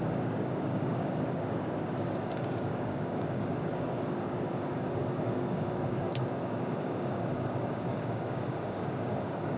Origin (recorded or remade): remade